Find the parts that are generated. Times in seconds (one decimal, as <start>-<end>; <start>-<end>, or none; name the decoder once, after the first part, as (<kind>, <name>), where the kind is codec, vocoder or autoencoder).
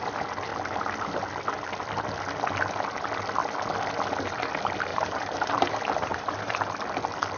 4.9-6.7 (vocoder, BigVGAN v2)